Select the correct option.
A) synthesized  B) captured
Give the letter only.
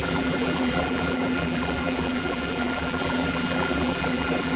A